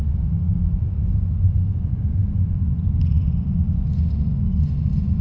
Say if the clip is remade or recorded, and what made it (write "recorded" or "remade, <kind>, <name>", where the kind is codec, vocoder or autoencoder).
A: remade, vocoder, Vocos